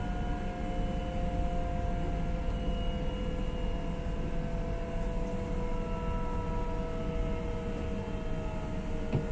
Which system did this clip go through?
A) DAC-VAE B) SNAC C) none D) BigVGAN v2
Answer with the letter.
C